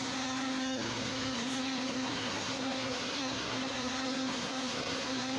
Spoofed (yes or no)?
yes